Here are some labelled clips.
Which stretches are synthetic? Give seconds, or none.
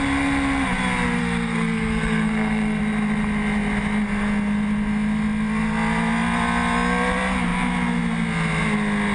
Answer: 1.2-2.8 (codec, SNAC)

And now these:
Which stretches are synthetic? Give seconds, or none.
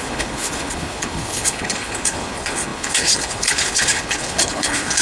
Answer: 0.0-5.0 (codec, HILCodec)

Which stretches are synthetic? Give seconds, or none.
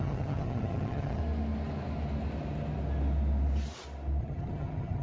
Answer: 0.0-1.2 (vocoder, HiFi-GAN); 4.2-5.0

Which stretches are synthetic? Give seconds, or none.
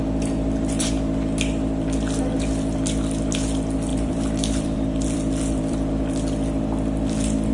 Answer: 3.9-5.9 (vocoder, BigVGAN v2)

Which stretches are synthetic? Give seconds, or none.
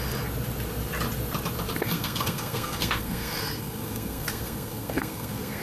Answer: 1.8-5.6 (codec, SNAC)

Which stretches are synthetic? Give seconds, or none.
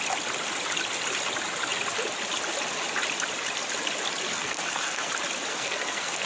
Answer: 4.3-5.1 (codec, SNAC); 5.5-6.3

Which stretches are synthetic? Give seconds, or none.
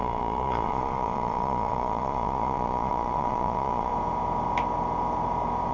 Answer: 0.0-3.9 (vocoder, Vocos)